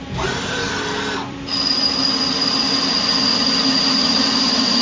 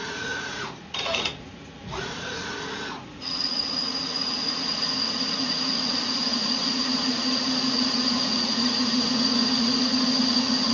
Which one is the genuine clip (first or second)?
first